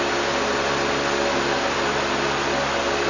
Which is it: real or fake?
real